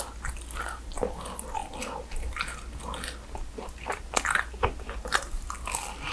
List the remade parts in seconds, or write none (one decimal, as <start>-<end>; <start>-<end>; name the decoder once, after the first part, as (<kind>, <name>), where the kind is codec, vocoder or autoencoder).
none